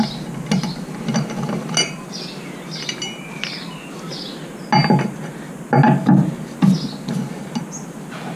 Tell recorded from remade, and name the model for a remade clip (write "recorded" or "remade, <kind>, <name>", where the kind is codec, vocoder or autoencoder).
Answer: recorded